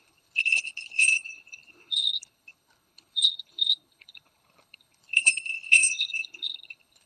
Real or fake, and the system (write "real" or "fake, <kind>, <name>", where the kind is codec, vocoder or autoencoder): fake, codec, HILCodec